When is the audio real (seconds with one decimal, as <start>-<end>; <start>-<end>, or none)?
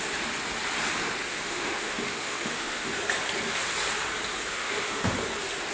0.0-1.3; 2.9-4.5; 5.1-5.7